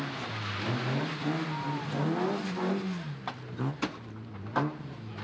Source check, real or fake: real